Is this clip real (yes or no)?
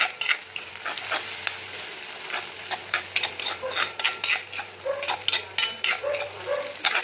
yes